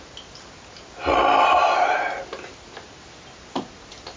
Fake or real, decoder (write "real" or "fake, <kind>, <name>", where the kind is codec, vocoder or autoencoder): real